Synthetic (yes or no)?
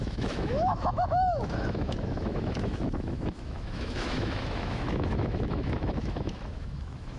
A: yes